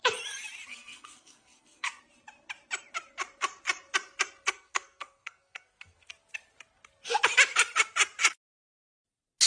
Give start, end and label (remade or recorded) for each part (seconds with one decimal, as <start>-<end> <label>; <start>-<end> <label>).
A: 0.0-0.7 recorded; 0.7-2.0 remade; 2.0-4.5 recorded; 4.5-6.1 remade; 6.1-9.5 recorded